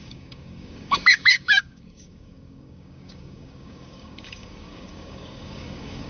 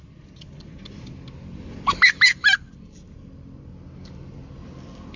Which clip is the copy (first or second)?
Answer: first